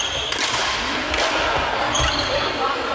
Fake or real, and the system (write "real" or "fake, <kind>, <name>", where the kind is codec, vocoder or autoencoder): real